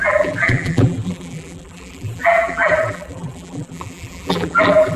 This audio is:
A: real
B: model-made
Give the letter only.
B